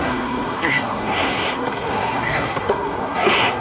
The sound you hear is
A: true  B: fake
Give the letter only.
B